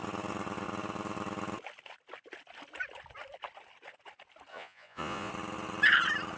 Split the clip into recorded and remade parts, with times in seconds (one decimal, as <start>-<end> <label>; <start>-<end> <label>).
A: 0.0-4.5 recorded; 4.5-5.3 remade; 5.3-6.4 recorded